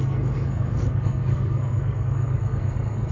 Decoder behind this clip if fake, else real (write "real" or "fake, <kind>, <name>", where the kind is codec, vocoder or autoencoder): fake, codec, SNAC